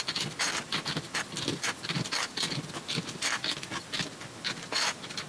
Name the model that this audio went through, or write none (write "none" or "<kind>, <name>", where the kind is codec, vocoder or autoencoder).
none